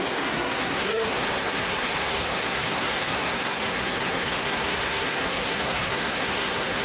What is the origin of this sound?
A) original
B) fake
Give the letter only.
B